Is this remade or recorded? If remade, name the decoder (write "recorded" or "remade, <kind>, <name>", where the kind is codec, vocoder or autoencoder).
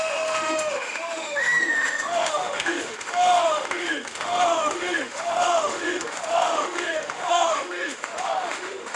remade, autoencoder, DAC-VAE